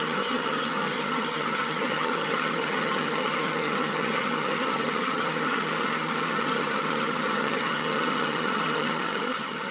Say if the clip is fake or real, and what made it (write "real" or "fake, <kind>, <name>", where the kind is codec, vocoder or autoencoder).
fake, vocoder, HiFi-GAN